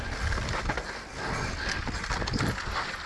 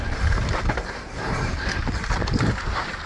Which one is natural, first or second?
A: first